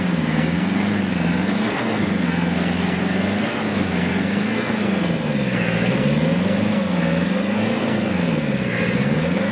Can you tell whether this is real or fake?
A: fake